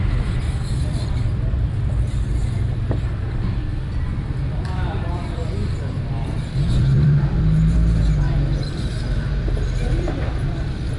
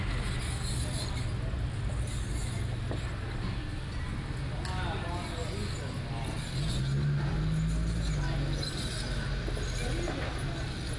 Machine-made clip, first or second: first